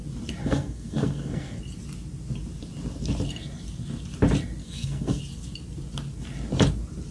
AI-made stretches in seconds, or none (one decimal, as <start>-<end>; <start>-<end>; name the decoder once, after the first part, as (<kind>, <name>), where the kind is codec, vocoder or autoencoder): 0.4-1.6 (codec, SNAC); 4.6-5.2